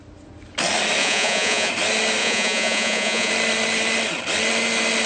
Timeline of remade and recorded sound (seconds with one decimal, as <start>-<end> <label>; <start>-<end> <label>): 0.0-1.0 recorded; 1.0-1.7 remade; 1.7-2.2 recorded; 2.2-3.3 remade; 3.3-5.1 recorded